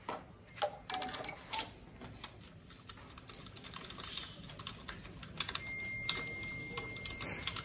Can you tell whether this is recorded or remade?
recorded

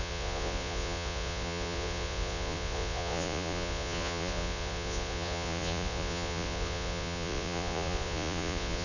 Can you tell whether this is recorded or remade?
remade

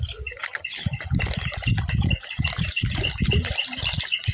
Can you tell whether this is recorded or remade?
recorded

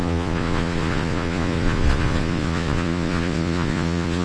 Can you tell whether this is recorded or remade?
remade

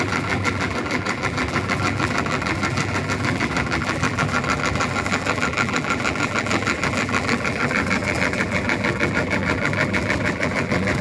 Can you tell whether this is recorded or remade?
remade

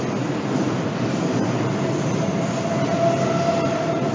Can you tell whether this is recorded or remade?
recorded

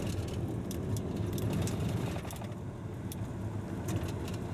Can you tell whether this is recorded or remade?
recorded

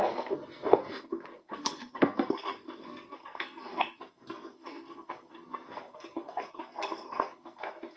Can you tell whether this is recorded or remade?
remade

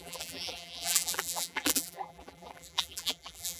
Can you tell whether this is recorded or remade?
remade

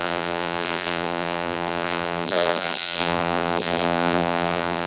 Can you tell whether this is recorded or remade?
remade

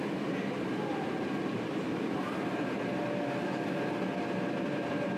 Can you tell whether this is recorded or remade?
recorded